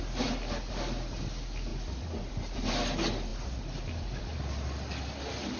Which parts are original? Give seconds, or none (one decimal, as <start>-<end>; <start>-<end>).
0.0-5.6